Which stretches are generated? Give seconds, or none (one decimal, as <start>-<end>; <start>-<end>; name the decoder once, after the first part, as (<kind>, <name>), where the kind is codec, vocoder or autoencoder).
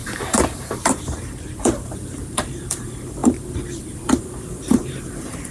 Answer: 0.0-5.5 (vocoder, BigVGAN v2)